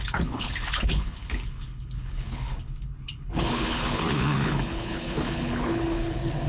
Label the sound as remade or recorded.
remade